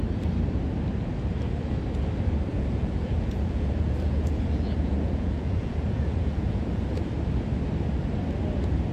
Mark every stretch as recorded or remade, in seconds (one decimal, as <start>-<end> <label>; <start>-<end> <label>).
0.0-2.5 recorded; 2.5-6.9 remade; 6.9-8.9 recorded